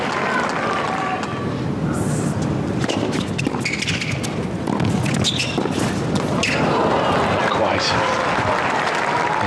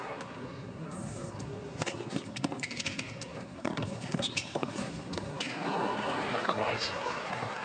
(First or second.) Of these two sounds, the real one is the first